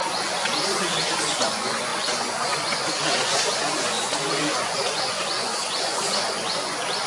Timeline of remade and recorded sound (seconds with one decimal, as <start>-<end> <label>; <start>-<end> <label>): 0.0-7.1 remade